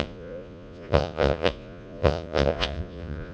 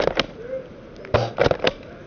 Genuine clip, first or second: second